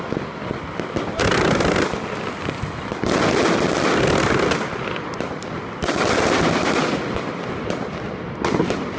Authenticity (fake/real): real